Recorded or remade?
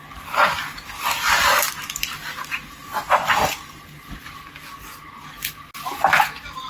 recorded